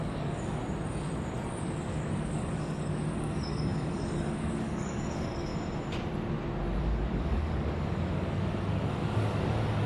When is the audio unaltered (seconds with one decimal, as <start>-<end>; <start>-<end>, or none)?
0.6-1.6; 5.5-6.8